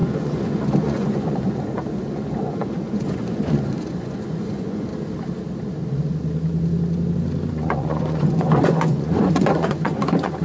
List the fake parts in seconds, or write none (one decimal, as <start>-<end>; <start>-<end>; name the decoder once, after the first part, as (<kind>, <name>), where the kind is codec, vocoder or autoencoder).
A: 0.0-4.9 (vocoder, Vocos); 7.5-10.4